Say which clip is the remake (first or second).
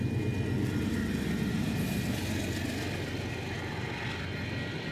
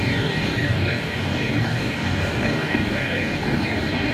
second